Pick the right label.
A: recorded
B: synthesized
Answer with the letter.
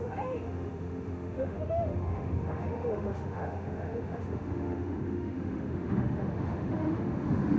B